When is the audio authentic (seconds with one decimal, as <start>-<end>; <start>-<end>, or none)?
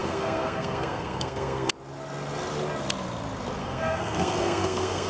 1.7-3.6